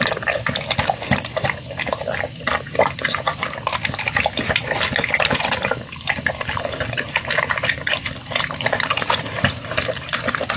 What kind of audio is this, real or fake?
real